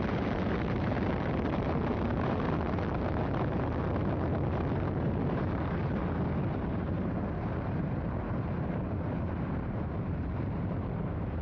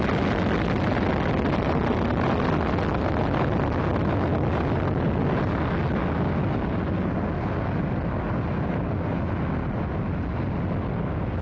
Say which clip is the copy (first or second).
first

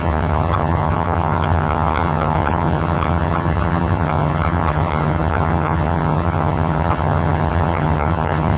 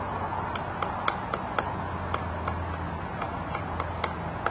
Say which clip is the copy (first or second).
first